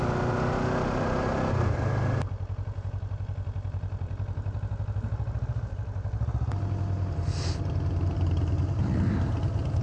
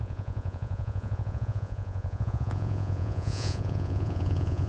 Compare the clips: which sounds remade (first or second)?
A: second